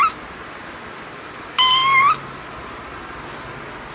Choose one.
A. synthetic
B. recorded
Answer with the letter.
B